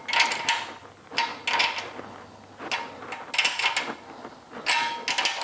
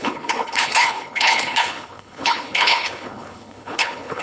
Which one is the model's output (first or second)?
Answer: second